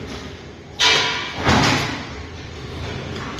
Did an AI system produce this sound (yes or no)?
no